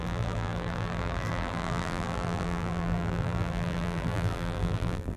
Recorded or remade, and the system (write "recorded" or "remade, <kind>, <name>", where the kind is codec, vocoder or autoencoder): remade, vocoder, BigVGAN v2